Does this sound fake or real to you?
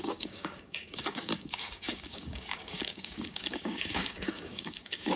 fake